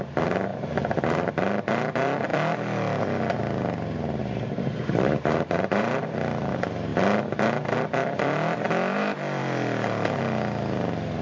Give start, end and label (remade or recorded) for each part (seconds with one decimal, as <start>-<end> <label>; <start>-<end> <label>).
0.0-0.5 recorded; 0.5-1.3 remade; 1.3-4.2 recorded; 4.2-6.5 remade; 6.5-11.2 recorded